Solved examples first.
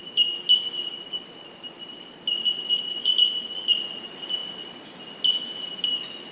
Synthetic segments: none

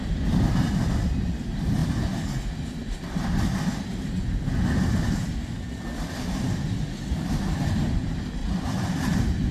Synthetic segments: none

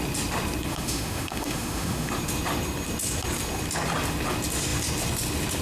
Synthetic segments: 0.7-2.1

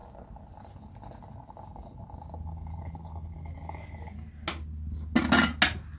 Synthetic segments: none

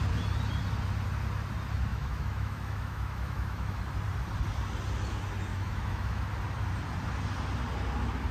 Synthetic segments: 1.9-3.8; 5.5-6.3